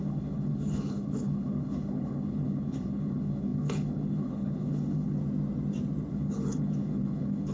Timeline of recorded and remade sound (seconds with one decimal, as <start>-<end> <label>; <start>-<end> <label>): 0.0-5.2 remade; 5.2-6.1 recorded; 6.1-7.5 remade